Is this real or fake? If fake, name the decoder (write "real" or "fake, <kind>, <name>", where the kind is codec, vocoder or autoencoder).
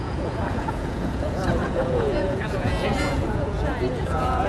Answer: fake, vocoder, Vocos